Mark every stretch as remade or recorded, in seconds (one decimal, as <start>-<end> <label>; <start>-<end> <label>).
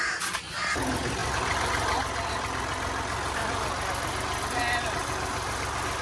0.0-6.0 recorded